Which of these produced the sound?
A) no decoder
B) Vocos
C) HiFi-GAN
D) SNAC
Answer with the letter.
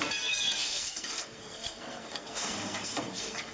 D